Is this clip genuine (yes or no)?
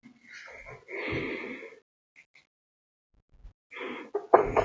yes